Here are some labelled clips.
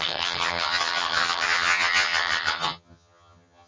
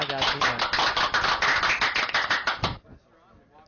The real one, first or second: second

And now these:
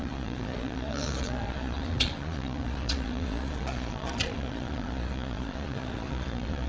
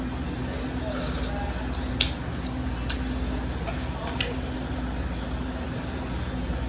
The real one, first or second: second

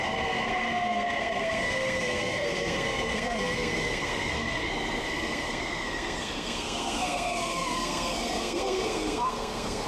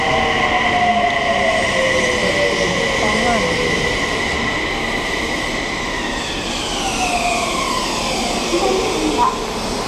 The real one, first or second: second